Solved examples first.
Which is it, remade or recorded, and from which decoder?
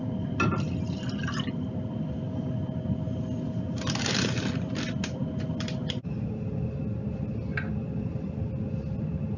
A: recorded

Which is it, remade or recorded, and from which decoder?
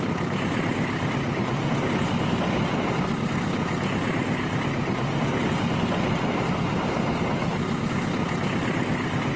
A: recorded